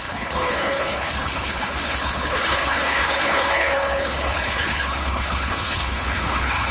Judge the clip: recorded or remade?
remade